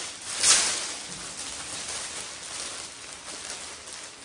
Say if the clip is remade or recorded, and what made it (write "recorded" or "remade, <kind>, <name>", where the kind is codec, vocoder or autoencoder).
recorded